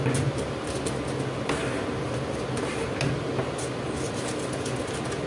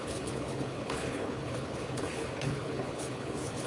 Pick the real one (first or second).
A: first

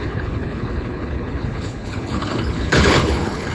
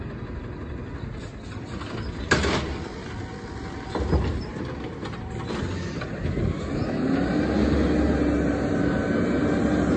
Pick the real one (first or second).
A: second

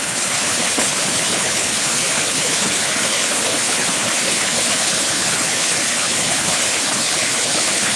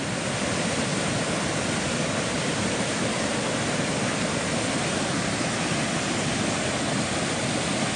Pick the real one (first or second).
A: second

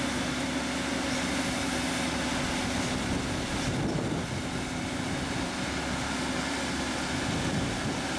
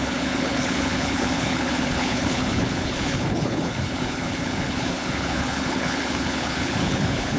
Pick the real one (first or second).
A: first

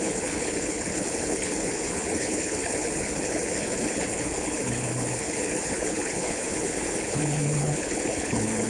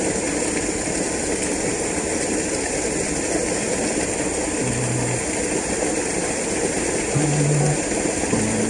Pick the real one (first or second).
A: second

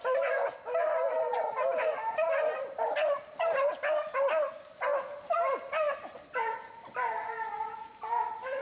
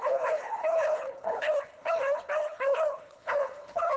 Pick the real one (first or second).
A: first